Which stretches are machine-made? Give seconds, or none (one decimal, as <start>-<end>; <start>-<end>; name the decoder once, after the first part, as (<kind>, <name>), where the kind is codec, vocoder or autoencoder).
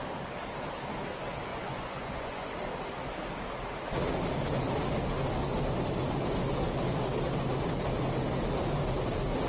1.5-2.5 (vocoder, Vocos)